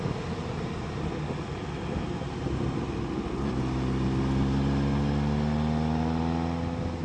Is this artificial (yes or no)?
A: no